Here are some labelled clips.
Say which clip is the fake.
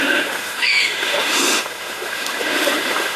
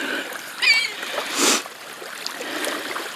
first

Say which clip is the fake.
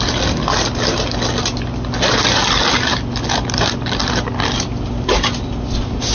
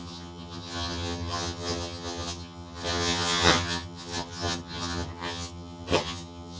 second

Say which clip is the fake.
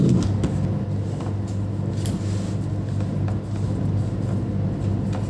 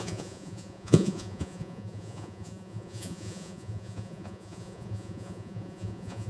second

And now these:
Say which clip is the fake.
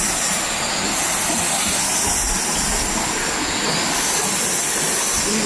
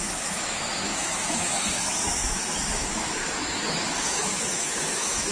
second